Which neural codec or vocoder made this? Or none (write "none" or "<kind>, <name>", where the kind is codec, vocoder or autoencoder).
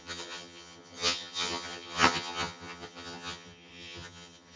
vocoder, HiFi-GAN